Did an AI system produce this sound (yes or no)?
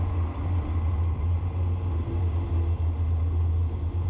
no